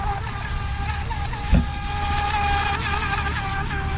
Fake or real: real